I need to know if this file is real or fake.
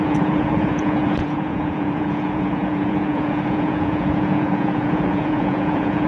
fake